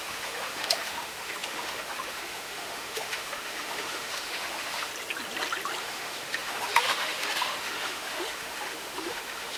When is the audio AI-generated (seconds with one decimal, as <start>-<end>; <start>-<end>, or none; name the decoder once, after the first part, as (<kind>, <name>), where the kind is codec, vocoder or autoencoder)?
0.0-4.9 (autoencoder, DAC-VAE); 5.8-9.6